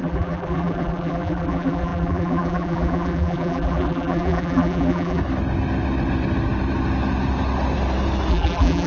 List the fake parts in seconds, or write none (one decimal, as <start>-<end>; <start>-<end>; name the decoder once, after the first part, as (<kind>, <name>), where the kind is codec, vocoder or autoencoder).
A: 0.0-5.2 (vocoder, BigVGAN v2); 8.3-8.9